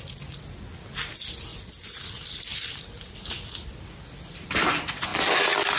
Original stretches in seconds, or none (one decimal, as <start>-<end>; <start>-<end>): 0.0-1.5; 2.0-2.5; 3.2-5.8